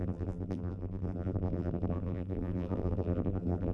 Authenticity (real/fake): fake